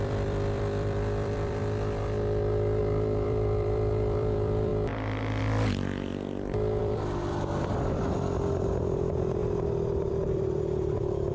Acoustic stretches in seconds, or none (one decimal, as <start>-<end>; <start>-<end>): 1.6-2.8; 4.7-5.4; 6.1-6.8; 9.4-10.1